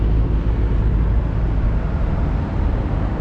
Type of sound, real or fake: real